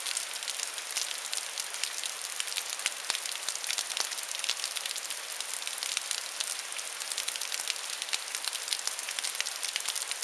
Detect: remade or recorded recorded